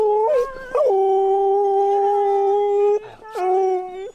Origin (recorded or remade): recorded